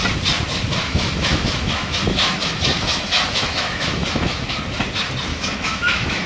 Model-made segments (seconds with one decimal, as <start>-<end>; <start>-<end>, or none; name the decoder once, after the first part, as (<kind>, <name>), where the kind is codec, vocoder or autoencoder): 0.8-4.6 (autoencoder, DAC-VAE); 5.3-6.3